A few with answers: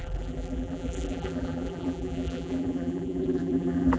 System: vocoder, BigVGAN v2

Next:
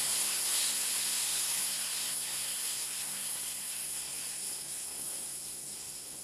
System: codec, SNAC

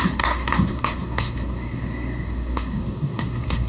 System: codec, SNAC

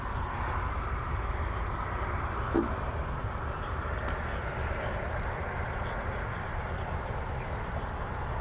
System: none